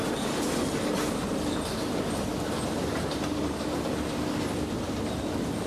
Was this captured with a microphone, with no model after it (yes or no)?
yes